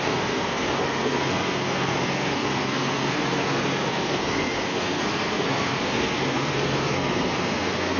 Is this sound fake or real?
fake